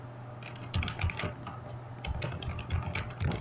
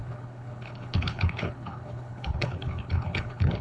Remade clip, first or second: second